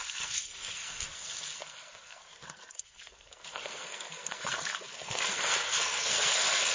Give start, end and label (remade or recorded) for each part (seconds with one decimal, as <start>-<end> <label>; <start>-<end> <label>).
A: 0.0-6.7 remade